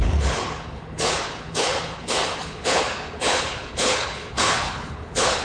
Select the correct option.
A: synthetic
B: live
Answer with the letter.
A